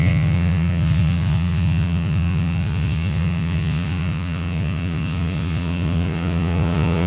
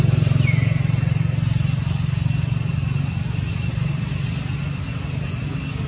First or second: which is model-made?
first